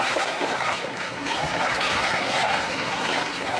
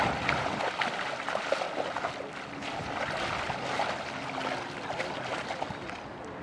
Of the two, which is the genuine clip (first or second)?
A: second